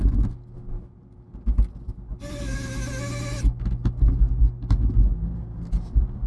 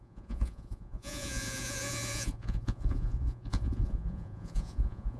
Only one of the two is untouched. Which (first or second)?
first